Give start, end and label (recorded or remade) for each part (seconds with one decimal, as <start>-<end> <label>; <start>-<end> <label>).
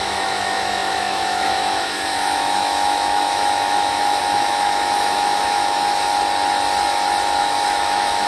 0.0-6.1 remade; 6.1-7.4 recorded; 7.4-8.3 remade